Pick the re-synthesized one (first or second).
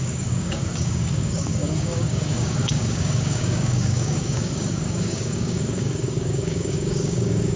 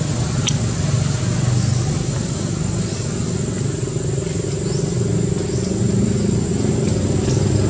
first